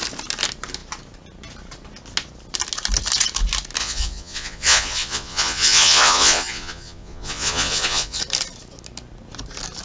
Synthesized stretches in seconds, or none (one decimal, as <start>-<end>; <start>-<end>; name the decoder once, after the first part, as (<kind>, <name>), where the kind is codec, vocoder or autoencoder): 3.8-8.2 (vocoder, Vocos)

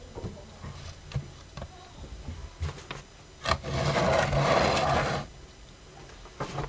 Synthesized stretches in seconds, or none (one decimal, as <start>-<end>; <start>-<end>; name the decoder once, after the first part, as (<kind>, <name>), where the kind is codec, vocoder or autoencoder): none